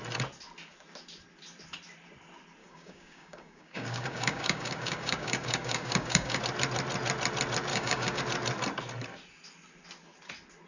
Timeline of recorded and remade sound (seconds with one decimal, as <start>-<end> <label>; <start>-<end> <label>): 0.0-2.6 recorded; 2.6-6.4 remade; 6.4-7.7 recorded; 7.7-8.2 remade; 8.2-10.7 recorded